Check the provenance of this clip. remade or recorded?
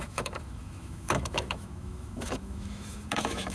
remade